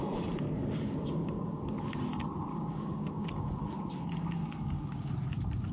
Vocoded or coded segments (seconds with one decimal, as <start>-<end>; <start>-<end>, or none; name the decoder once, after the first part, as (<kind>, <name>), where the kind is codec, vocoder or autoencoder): 0.6-1.6 (codec, DAC); 2.5-5.1